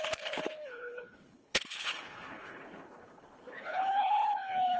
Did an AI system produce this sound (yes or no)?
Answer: yes